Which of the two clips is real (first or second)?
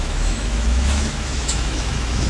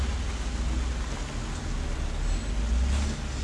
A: second